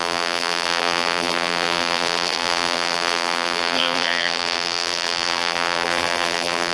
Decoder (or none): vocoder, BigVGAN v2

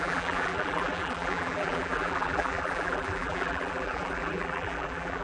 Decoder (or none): vocoder, BigVGAN v2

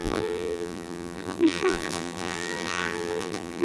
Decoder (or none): vocoder, BigVGAN v2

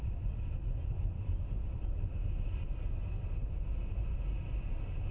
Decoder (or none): none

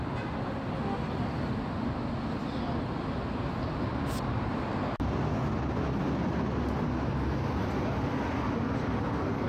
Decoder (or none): none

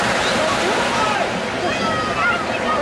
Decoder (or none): none